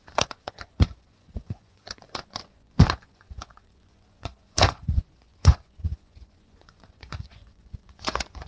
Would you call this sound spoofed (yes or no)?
yes